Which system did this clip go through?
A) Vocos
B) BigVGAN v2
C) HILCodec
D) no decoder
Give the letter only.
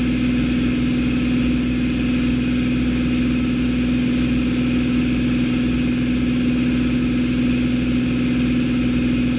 D